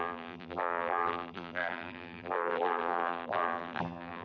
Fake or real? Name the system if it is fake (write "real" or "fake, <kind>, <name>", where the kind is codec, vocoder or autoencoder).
fake, vocoder, BigVGAN v2